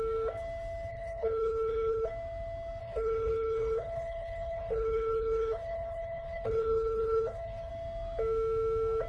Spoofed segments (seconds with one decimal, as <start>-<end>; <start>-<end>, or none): 0.9-2.1; 2.8-7.7